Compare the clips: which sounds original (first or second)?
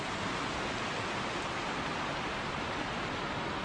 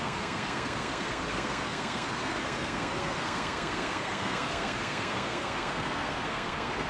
first